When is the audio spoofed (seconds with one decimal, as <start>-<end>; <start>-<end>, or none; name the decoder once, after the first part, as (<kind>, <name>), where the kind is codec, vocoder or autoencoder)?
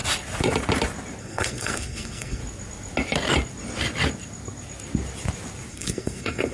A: 1.2-2.4 (codec, SNAC); 5.7-6.5